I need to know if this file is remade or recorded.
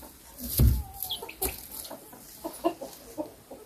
recorded